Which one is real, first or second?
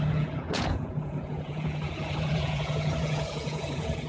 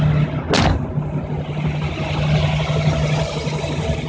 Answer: second